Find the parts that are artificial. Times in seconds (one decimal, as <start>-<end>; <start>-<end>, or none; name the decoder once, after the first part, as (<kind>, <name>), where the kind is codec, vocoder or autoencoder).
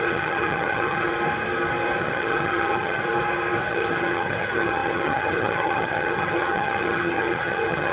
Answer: 0.0-1.1 (vocoder, HiFi-GAN); 2.0-3.0; 3.7-7.9